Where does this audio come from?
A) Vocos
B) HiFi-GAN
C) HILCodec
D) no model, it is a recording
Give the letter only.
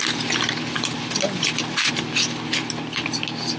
D